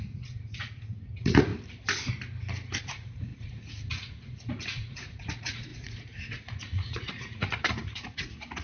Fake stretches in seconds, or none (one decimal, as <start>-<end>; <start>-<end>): 0.0-1.5; 2.8-8.6